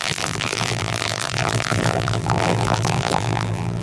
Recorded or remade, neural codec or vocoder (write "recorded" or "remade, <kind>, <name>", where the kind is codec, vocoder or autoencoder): remade, vocoder, BigVGAN v2